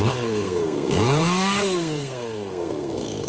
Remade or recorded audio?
remade